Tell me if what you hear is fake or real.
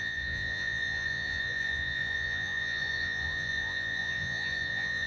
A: fake